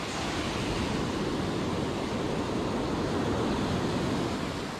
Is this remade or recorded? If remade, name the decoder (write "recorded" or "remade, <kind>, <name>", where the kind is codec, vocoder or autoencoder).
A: recorded